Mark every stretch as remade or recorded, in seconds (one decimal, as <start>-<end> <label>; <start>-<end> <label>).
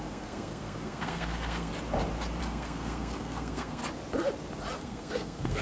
0.0-1.7 remade; 1.7-2.4 recorded; 2.4-3.8 remade; 3.8-4.8 recorded; 4.8-5.6 remade